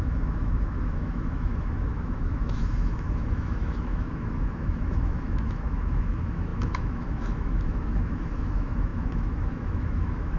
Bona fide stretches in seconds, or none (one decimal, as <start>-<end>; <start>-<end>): none